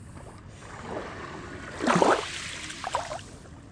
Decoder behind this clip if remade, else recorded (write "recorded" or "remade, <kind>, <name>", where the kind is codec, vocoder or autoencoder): recorded